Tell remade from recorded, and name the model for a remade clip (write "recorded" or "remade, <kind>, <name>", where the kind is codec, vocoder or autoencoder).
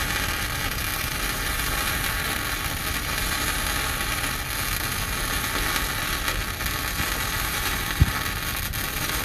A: recorded